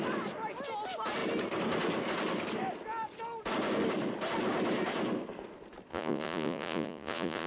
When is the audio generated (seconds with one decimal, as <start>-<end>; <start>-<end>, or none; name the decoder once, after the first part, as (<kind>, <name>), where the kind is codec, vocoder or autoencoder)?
5.9-7.5 (vocoder, Vocos)